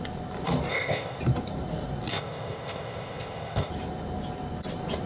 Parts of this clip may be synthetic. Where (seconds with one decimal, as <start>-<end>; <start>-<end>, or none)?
0.7-1.2; 2.1-3.7